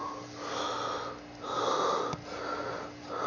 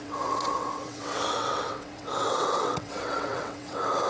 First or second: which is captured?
first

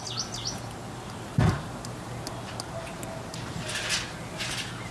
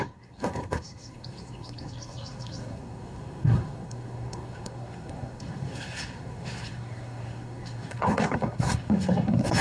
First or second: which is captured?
first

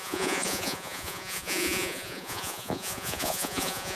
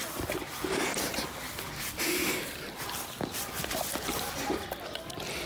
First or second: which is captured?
second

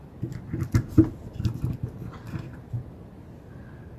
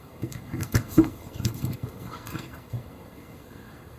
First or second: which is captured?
first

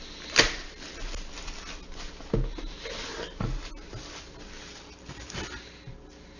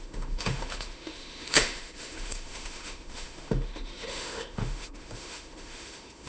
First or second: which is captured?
first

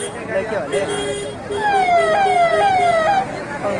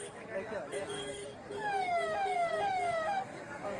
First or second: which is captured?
first